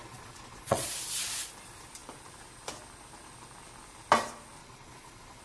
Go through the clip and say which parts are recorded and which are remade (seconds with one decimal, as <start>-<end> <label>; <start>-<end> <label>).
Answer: 0.0-0.9 remade; 0.9-4.6 recorded; 4.6-5.4 remade